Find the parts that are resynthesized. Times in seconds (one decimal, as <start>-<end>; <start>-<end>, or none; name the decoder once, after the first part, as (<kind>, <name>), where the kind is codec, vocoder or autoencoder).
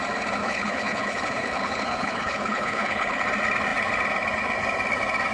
0.4-3.2 (codec, HILCodec)